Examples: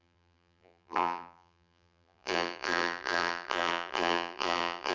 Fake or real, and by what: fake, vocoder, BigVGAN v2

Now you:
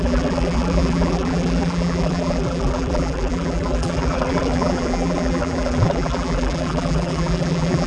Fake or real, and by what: fake, vocoder, BigVGAN v2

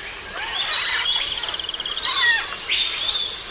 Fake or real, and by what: real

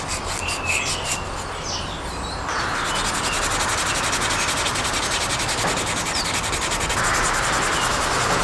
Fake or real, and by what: real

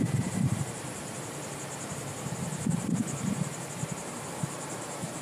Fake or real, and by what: fake, vocoder, BigVGAN v2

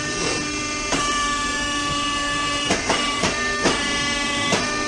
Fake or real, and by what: fake, vocoder, BigVGAN v2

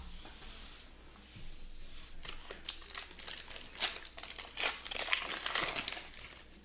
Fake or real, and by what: real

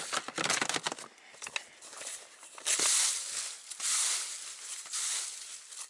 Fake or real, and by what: real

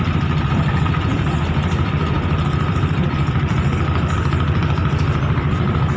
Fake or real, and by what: fake, vocoder, BigVGAN v2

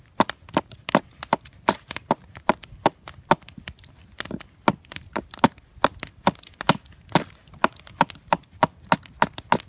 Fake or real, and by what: real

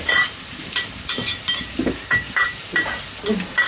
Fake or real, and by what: fake, vocoder, BigVGAN v2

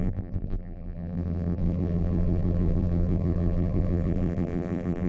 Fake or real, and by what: fake, vocoder, BigVGAN v2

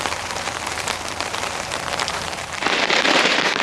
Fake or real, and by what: fake, vocoder, BigVGAN v2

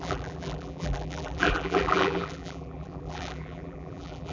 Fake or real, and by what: fake, vocoder, BigVGAN v2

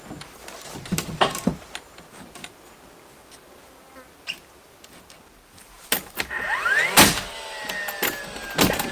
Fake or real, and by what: real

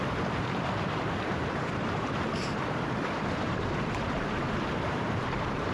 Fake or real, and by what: fake, vocoder, BigVGAN v2